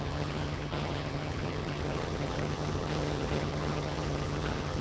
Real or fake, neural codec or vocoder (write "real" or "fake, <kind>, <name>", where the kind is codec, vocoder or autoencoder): fake, vocoder, HiFi-GAN